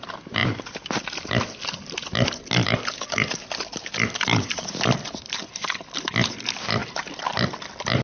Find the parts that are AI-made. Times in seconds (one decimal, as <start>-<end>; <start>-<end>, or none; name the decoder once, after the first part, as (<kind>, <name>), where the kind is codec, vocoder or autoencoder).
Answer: 0.0-0.4 (vocoder, BigVGAN v2); 4.2-6.8; 7.4-8.0